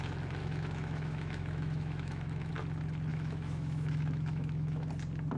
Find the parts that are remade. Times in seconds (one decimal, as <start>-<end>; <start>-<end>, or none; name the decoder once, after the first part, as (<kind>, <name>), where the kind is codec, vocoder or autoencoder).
0.4-2.5 (autoencoder, DAC-VAE); 3.1-4.9